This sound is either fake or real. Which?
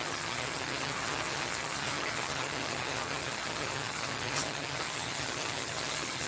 fake